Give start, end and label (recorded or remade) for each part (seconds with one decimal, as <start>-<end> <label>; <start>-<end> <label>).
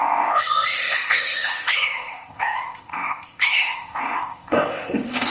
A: 0.0-5.3 remade